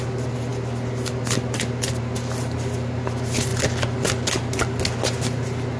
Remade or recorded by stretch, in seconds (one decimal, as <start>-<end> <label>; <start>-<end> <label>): 0.0-5.8 recorded